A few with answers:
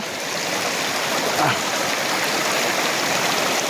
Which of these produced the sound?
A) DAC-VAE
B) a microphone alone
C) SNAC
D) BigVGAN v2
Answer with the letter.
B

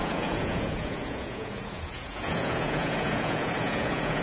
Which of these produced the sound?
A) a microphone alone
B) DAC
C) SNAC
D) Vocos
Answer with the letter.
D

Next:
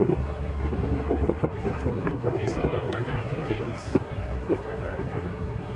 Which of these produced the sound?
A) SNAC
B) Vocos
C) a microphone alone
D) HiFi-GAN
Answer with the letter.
A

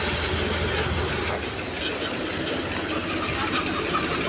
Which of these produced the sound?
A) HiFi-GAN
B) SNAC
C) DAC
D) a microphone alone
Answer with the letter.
D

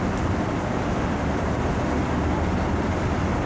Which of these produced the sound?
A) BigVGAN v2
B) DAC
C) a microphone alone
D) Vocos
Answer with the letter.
C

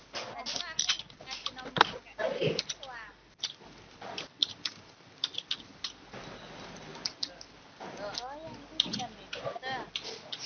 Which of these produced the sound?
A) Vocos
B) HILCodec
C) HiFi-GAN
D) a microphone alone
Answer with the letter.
D